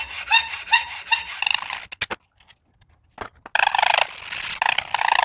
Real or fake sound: real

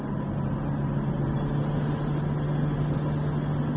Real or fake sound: real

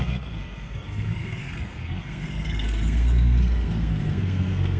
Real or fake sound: fake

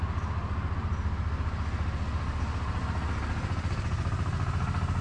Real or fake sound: real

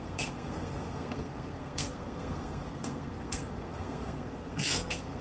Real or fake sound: fake